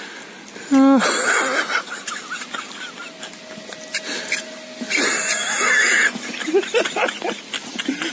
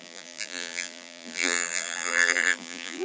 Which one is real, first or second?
first